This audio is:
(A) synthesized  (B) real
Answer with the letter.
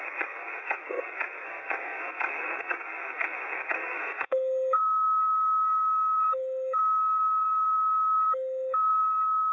A